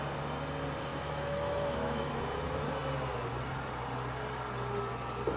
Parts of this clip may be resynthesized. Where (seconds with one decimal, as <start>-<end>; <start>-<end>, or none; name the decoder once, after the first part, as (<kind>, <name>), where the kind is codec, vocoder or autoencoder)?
0.9-2.2 (autoencoder, DAC-VAE)